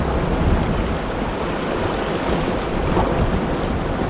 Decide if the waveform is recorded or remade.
recorded